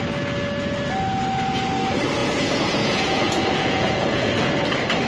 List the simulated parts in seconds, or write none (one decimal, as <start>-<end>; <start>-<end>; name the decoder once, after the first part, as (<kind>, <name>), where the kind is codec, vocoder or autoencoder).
2.2-4.3 (vocoder, Vocos)